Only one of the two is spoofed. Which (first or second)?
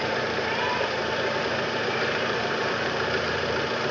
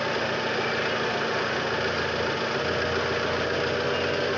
first